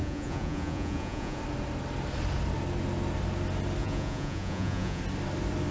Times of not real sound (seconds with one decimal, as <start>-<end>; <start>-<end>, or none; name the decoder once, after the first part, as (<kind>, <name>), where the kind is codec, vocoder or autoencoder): 0.0-1.4 (vocoder, Vocos); 3.8-5.0